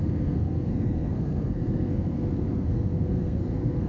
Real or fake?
fake